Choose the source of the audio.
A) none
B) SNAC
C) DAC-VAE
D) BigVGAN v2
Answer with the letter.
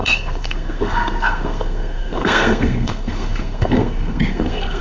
B